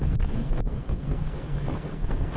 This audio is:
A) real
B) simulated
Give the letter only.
B